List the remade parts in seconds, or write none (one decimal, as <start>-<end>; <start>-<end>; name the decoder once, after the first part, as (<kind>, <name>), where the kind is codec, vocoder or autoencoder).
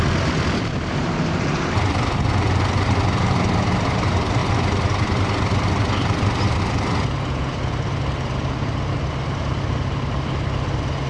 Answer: 0.0-4.4 (vocoder, BigVGAN v2); 6.6-11.1